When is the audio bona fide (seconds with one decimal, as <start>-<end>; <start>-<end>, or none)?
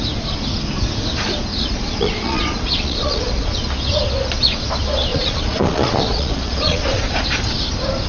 0.0-1.5; 3.5-5.1; 7.1-8.1